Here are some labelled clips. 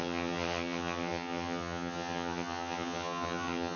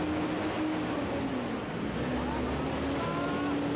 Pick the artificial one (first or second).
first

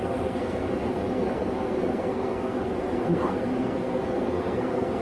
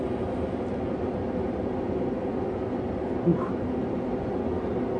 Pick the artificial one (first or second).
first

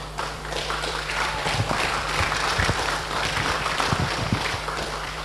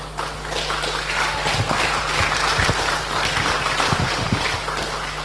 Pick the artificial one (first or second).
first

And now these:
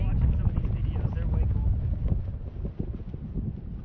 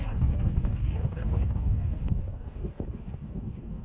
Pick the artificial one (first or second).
second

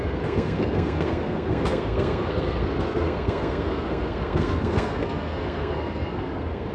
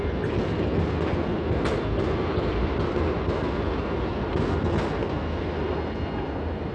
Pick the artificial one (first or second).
first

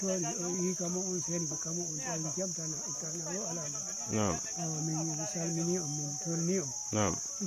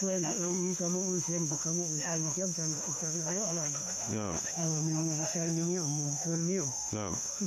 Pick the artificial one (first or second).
second